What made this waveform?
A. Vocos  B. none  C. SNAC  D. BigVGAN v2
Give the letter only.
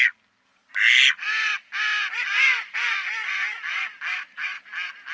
B